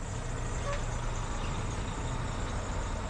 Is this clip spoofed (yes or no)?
no